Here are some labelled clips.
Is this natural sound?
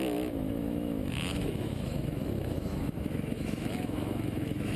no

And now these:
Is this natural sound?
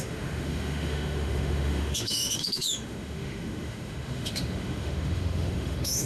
no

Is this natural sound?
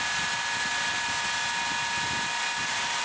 yes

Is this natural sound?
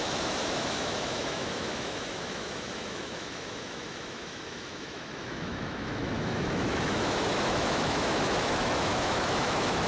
no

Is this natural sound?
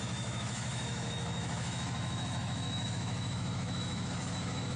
no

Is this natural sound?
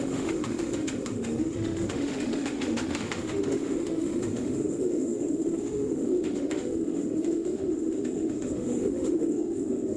no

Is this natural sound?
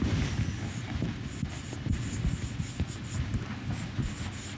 yes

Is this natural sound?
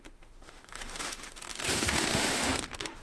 no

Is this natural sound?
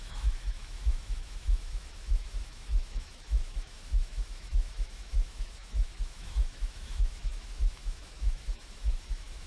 no